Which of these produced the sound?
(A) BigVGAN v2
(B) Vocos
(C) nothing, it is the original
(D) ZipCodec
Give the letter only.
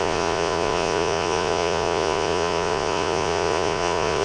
B